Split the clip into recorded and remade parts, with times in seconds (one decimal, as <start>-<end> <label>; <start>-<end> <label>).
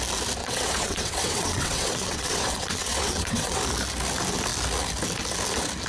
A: 0.0-0.4 recorded; 0.4-3.6 remade; 3.6-5.9 recorded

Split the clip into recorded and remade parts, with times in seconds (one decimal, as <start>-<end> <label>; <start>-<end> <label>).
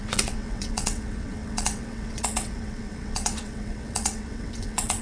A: 0.0-5.0 remade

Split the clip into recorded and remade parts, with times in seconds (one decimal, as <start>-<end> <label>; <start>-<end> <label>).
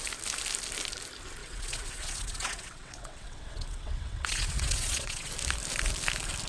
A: 0.0-1.4 recorded; 1.4-5.3 remade; 5.3-6.5 recorded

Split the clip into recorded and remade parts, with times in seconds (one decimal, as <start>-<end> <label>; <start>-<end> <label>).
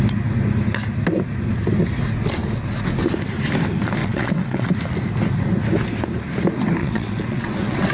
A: 0.0-4.0 recorded; 4.0-4.7 remade; 4.7-6.8 recorded; 6.8-7.9 remade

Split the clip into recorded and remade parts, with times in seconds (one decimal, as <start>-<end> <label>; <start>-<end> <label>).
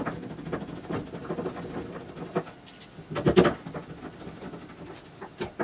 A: 0.0-5.6 recorded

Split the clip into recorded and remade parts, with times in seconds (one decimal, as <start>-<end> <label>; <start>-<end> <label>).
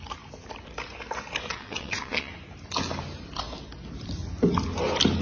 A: 0.0-1.5 recorded; 1.5-2.3 remade; 2.3-5.2 recorded